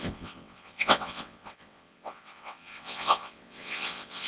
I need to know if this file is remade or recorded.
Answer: remade